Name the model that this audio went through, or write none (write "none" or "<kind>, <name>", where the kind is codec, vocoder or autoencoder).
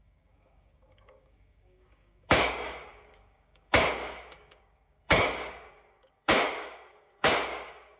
codec, DAC